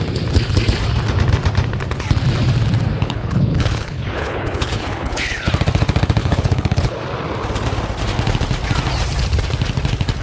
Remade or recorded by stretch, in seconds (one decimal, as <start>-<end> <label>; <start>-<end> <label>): 0.0-3.0 recorded; 3.0-5.5 remade; 5.5-6.2 recorded; 6.2-7.0 remade; 7.0-10.2 recorded